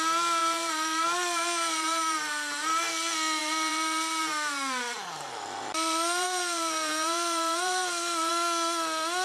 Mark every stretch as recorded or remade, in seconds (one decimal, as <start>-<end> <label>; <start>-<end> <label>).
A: 0.0-0.4 recorded; 0.4-2.9 remade; 2.9-3.4 recorded; 3.4-8.3 remade; 8.3-9.2 recorded